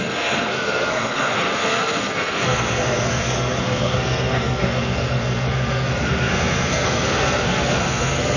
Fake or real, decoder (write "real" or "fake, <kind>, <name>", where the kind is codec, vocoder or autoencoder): fake, codec, SNAC